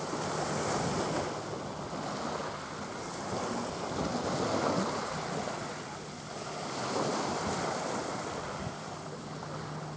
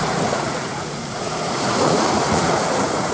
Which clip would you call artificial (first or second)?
second